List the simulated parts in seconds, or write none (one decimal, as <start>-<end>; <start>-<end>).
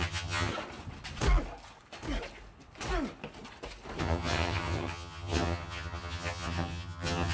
0.0-0.5; 4.0-7.3